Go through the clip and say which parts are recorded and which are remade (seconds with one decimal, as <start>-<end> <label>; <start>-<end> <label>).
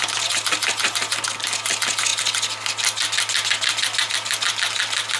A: 0.0-5.2 recorded